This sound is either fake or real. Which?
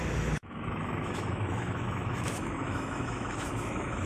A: fake